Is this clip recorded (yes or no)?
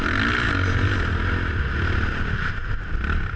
yes